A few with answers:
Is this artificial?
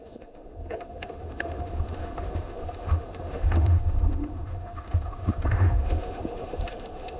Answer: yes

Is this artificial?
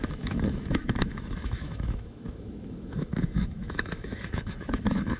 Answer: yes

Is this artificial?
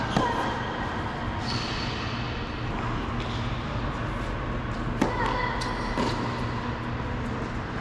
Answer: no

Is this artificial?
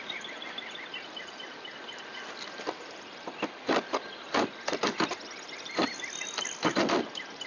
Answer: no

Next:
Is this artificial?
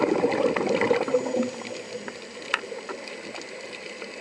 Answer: no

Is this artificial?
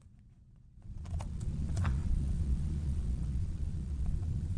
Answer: yes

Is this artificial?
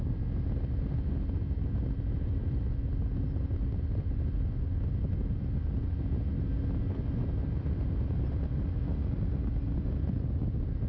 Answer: no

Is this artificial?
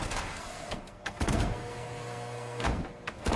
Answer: yes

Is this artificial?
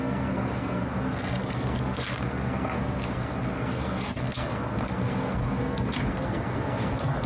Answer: yes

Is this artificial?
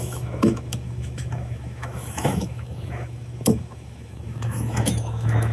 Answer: yes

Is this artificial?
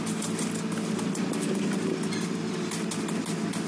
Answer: no